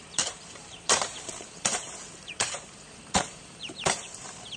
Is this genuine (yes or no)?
no